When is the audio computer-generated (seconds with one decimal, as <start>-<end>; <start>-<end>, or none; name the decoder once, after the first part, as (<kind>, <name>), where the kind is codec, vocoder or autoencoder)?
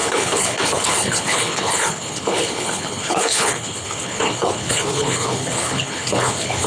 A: 0.0-6.7 (codec, HILCodec)